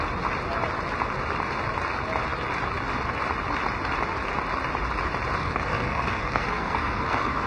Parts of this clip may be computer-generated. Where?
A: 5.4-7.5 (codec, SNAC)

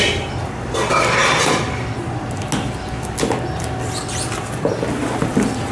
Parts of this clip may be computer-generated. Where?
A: none

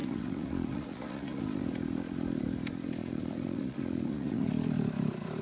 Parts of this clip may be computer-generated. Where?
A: 0.0-1.4 (vocoder, Vocos); 3.0-4.5

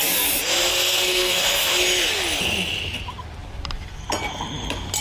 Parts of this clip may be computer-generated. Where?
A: 0.7-1.4 (codec, SNAC)

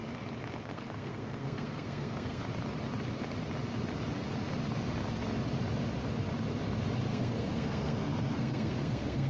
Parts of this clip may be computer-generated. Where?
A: 0.6-2.4 (codec, SNAC); 7.1-9.3

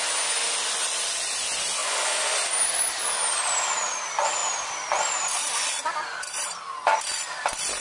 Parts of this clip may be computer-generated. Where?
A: 1.8-2.3 (vocoder, Vocos)

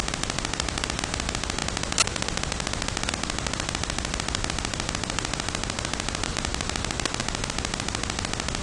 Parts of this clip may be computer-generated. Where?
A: none